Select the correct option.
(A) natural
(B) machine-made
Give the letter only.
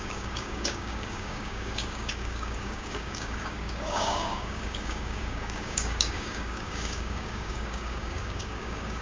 B